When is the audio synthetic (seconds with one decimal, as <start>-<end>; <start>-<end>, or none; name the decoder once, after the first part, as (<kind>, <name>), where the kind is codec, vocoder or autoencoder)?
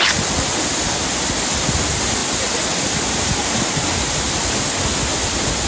none